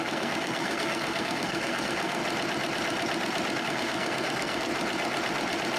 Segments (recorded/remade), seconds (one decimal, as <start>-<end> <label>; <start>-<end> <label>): 0.0-2.2 remade; 2.2-3.6 recorded; 3.6-4.7 remade; 4.7-5.8 recorded